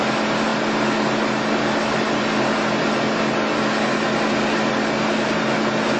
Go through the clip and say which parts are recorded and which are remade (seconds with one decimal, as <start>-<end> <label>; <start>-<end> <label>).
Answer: 0.0-6.0 recorded